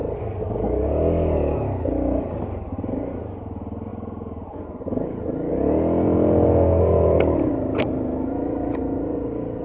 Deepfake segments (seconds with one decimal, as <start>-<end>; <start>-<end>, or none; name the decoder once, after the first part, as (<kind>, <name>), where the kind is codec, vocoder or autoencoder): none